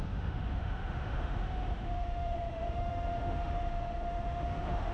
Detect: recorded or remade remade